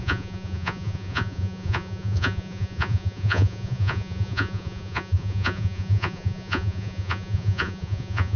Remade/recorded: remade